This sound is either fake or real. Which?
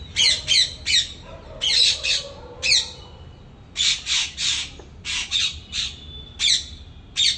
real